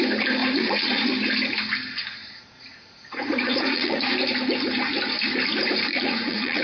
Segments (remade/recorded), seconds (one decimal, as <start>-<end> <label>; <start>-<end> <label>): 0.0-0.4 recorded; 0.4-1.1 remade; 1.1-2.2 recorded; 2.2-4.0 remade; 4.0-5.9 recorded; 5.9-6.6 remade